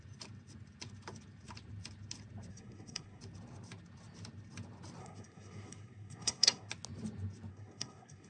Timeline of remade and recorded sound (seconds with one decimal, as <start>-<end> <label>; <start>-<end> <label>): 0.0-2.5 recorded; 2.5-3.2 remade; 3.2-5.0 recorded; 5.0-6.7 remade; 6.7-7.5 recorded; 7.5-8.3 remade